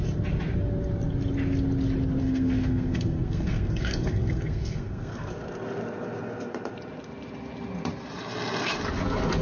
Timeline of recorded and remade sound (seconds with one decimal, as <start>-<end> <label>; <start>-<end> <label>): 0.0-2.2 recorded; 2.2-5.3 remade; 5.3-9.4 recorded